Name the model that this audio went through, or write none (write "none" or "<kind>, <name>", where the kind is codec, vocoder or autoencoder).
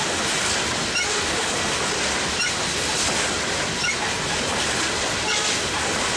none